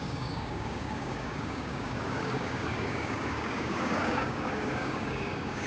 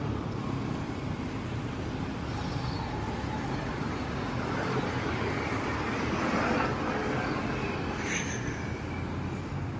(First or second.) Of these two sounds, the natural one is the second